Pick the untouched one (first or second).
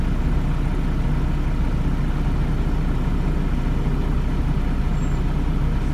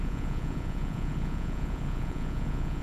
first